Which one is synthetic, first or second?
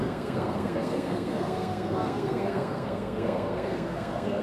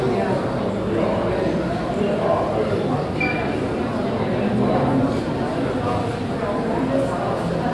first